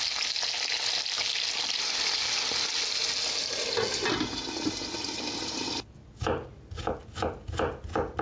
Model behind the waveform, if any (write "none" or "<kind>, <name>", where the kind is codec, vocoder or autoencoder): none